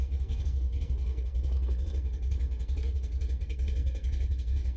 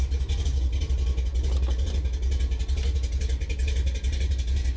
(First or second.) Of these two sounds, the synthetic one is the first